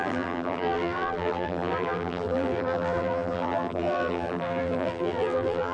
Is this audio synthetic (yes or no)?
yes